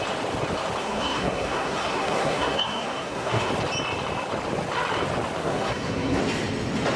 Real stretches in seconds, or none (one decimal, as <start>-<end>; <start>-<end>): 0.0-0.8; 3.5-5.4; 6.2-7.0